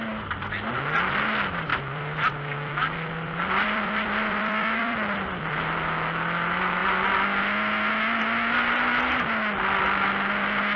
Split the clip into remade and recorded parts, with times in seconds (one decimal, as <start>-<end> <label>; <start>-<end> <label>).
0.0-1.7 recorded; 1.7-5.5 remade; 5.5-10.8 recorded